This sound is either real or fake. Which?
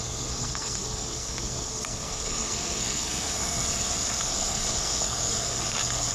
fake